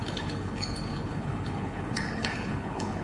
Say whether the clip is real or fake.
fake